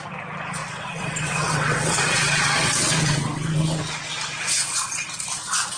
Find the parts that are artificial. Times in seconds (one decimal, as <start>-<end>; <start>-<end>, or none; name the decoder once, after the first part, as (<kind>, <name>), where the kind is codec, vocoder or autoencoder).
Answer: 0.6-3.8 (vocoder, WaveNeXt)